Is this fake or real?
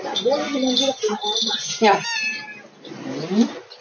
real